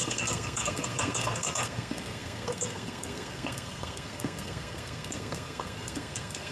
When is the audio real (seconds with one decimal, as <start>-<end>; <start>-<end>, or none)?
none